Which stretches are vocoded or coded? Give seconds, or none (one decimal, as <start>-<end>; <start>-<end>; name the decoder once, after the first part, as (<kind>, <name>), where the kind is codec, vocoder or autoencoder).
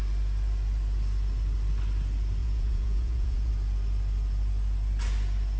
2.4-3.5 (vocoder, Vocos)